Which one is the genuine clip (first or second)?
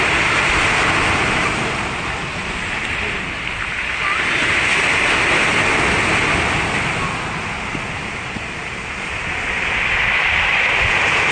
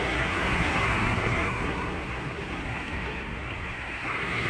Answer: first